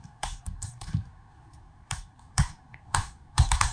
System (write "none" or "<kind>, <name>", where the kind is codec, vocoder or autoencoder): codec, SNAC